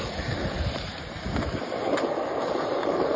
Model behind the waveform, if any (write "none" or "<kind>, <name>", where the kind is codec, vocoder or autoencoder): none